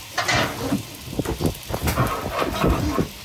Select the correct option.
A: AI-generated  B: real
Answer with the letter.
B